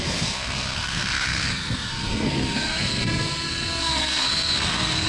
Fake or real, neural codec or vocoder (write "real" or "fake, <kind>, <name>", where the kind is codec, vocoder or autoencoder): fake, codec, SNAC